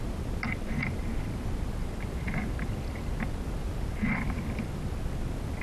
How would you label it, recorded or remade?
recorded